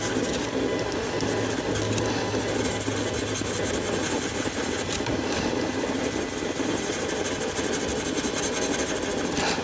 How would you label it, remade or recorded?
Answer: recorded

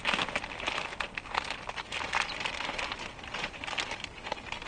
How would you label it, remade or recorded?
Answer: recorded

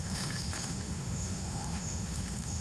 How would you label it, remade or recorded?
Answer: remade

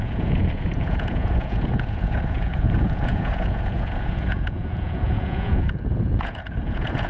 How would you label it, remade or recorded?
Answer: remade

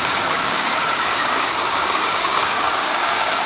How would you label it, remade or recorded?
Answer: remade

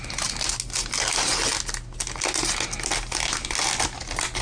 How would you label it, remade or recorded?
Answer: recorded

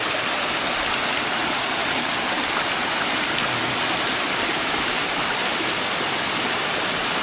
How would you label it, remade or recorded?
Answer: recorded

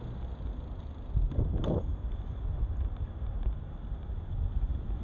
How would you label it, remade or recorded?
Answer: recorded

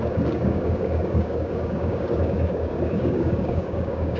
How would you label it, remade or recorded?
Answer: remade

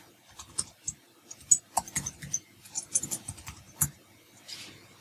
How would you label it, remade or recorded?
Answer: recorded